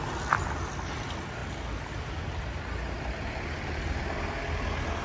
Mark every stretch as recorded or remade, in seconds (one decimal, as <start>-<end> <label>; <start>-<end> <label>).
0.0-5.0 recorded